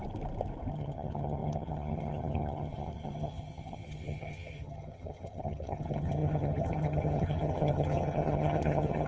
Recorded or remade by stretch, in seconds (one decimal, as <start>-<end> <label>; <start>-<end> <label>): 0.0-0.7 recorded; 0.7-9.1 remade